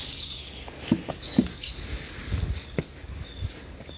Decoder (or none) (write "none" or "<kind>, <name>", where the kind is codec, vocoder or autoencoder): codec, DAC